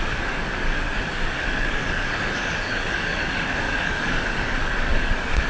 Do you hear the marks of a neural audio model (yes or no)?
yes